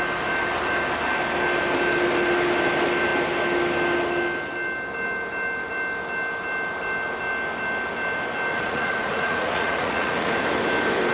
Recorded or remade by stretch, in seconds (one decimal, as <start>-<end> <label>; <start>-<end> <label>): 0.0-8.5 recorded; 8.5-10.3 remade; 10.3-11.1 recorded